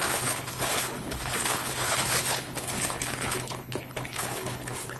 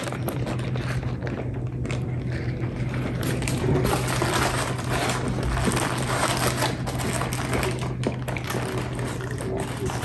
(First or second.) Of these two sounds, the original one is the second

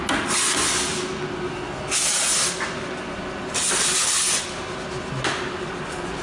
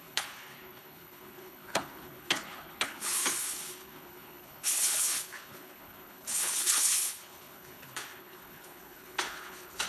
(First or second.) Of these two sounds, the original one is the first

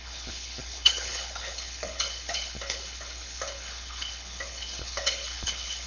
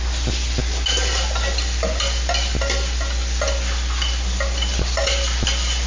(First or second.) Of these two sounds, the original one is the second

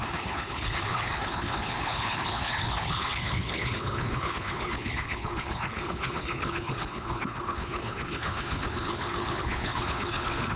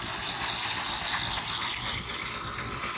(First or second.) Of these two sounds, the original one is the second